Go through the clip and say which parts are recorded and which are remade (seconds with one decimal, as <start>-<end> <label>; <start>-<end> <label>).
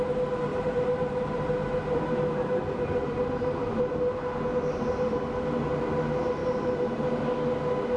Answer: 0.0-0.5 recorded; 0.5-5.2 remade; 5.2-6.4 recorded; 6.4-7.2 remade; 7.2-8.0 recorded